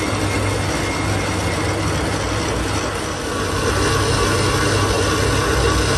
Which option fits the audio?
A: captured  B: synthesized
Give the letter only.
A